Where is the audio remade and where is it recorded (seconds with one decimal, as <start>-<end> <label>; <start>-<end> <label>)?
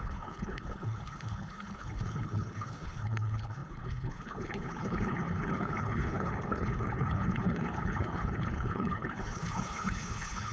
0.0-10.5 remade